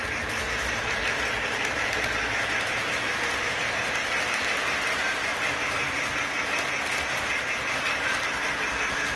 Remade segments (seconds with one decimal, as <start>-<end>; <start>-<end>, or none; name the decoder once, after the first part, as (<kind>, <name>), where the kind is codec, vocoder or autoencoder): 0.6-3.6 (vocoder, BigVGAN v2)